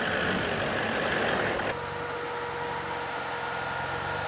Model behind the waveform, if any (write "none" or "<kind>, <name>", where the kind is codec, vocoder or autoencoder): none